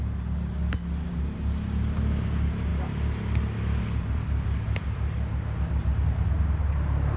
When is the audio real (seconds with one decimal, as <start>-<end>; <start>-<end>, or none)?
0.0-7.2